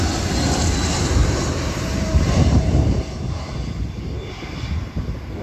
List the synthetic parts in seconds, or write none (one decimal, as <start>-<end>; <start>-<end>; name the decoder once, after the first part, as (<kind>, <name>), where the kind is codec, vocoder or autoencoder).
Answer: 1.2-3.4 (vocoder, BigVGAN v2)